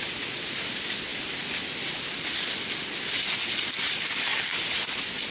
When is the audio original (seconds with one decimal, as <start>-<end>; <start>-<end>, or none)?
0.0-5.3